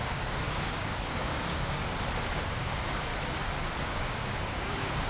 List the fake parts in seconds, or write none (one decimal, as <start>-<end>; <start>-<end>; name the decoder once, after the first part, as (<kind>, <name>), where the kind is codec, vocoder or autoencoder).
0.0-1.8 (codec, DAC); 2.4-3.1; 3.8-5.1